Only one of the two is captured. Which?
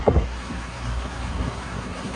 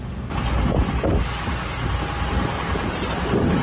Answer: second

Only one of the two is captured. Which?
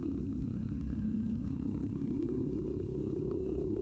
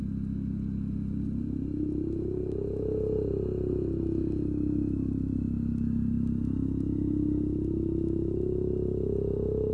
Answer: second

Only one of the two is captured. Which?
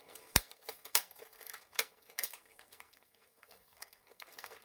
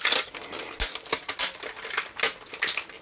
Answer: second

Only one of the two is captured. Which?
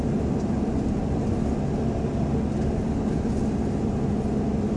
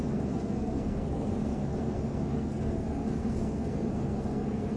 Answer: first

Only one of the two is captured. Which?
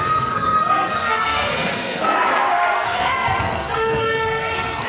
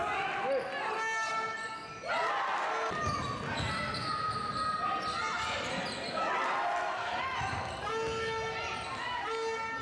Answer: second